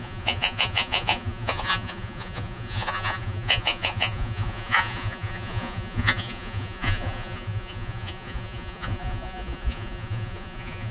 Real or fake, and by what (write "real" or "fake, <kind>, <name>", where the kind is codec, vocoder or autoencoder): fake, vocoder, Vocos